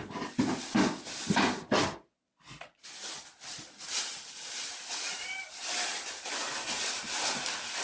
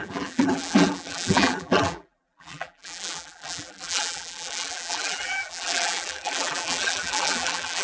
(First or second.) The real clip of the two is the first